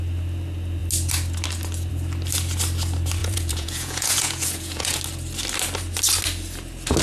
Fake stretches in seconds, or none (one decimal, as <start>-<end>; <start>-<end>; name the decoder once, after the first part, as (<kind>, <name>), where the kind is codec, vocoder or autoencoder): 3.2-5.0 (vocoder, Vocos)